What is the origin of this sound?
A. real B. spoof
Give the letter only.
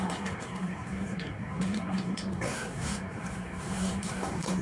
B